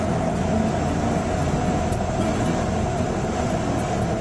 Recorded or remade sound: recorded